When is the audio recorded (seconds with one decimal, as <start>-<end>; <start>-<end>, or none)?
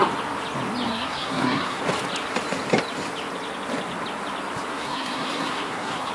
0.0-0.9; 1.8-4.7